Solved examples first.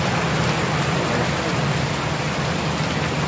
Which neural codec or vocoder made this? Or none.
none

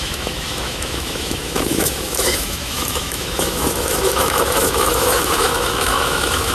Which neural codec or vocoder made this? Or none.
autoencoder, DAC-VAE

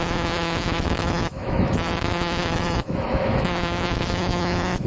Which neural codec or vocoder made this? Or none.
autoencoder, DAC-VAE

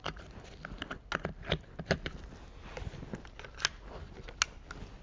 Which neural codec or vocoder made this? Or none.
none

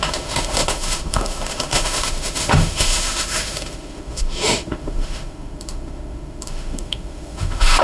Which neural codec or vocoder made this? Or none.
autoencoder, DAC-VAE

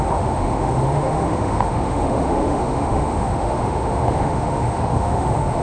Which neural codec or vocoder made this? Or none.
autoencoder, DAC-VAE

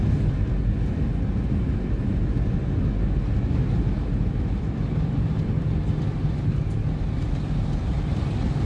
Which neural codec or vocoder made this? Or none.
none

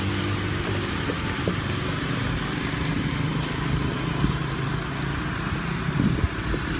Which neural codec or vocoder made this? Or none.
none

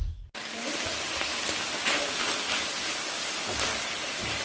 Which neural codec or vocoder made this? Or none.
none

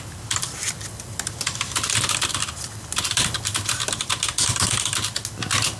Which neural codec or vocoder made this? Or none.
none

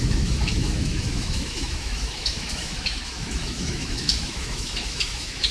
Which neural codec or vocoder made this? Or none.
autoencoder, DAC-VAE